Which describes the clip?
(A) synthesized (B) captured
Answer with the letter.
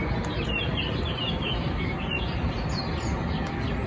B